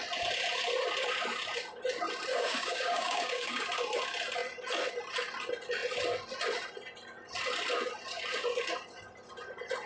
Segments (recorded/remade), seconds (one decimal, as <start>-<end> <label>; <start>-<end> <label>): 0.0-2.3 recorded; 2.3-3.6 remade; 3.6-9.9 recorded